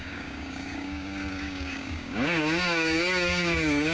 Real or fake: fake